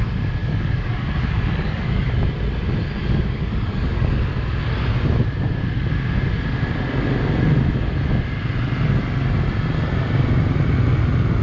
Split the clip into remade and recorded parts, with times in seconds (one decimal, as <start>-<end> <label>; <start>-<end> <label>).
0.0-0.4 recorded; 0.4-2.1 remade; 2.1-3.0 recorded; 3.0-4.3 remade; 4.3-11.4 recorded